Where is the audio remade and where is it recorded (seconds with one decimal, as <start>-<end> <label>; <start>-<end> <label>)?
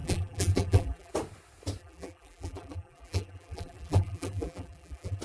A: 0.0-1.1 remade; 1.1-1.8 recorded; 1.8-5.2 remade